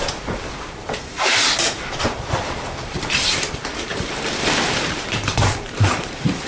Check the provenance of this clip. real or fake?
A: fake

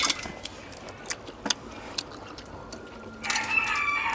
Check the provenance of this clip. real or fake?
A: real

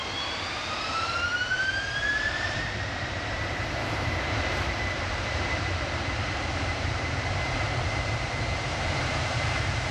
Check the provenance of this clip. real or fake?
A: fake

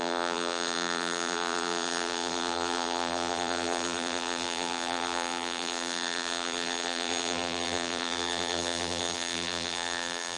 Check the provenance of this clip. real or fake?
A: fake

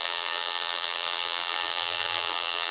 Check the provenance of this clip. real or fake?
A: fake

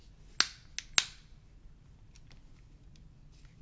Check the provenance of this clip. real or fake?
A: real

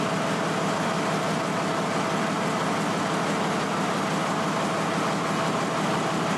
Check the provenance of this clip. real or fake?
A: real